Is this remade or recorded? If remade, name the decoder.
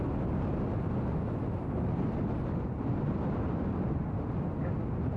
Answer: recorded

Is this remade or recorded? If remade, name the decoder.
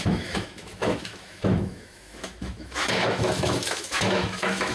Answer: remade, autoencoder, DAC-VAE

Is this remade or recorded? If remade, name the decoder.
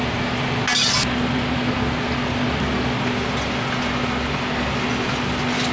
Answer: recorded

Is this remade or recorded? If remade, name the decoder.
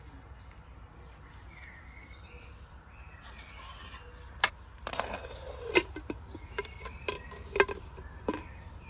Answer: recorded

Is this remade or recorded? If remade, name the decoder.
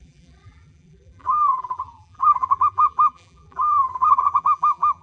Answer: remade, vocoder, BigVGAN v2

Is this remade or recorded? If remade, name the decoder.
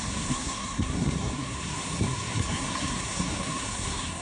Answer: remade, codec, SNAC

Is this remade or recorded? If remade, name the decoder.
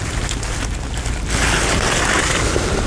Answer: recorded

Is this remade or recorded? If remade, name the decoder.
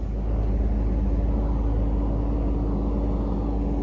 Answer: recorded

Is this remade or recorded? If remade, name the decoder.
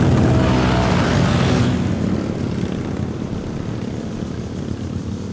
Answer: recorded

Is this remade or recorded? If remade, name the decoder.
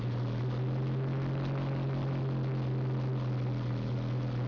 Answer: recorded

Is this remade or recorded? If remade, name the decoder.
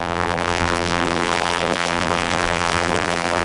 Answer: remade, vocoder, BigVGAN v2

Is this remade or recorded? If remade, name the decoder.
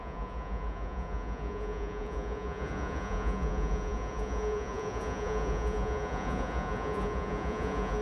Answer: remade, vocoder, Vocos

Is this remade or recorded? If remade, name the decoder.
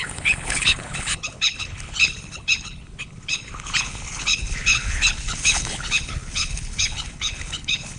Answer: remade, codec, HILCodec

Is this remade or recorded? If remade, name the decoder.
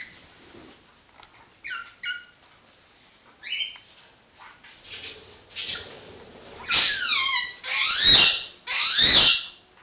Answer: recorded